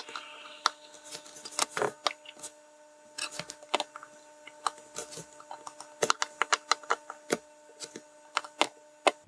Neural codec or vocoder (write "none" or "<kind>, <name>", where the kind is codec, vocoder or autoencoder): none